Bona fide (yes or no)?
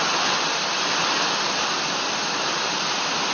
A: yes